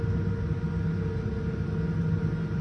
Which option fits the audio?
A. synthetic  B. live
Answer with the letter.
B